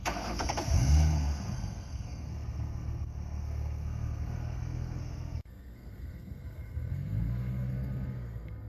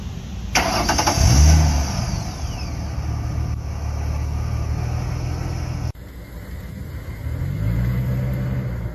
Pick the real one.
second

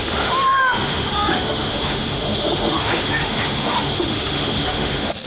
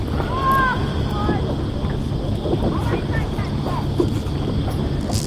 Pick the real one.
second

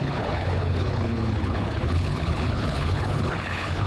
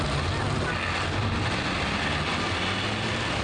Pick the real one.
second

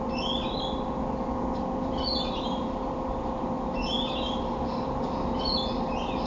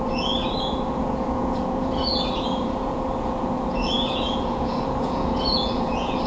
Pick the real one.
first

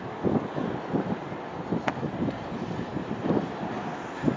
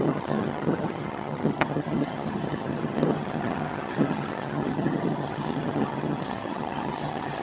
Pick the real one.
first